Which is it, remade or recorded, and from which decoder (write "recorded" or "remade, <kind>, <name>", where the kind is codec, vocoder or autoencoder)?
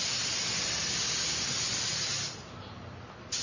recorded